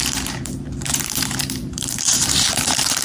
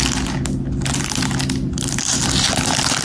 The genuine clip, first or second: second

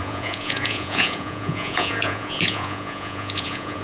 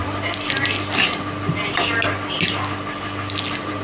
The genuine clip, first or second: second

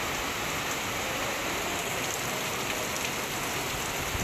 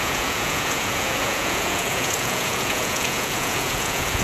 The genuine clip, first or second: first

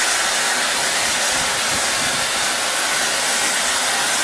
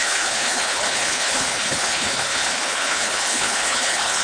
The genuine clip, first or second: first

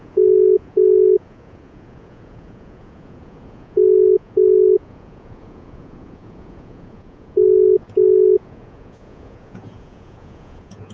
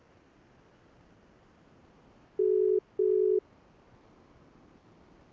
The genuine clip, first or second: second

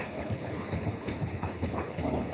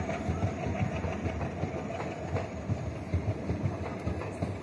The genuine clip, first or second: second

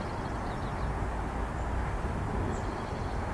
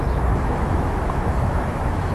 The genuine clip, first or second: first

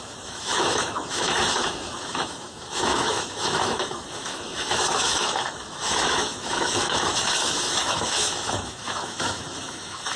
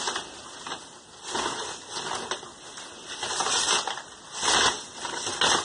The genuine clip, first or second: second